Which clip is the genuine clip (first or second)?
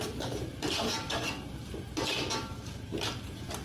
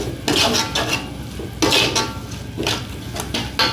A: second